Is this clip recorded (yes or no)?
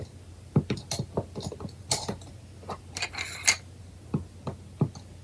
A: yes